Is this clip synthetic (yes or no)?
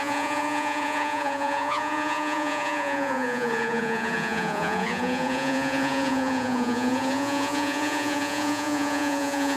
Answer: yes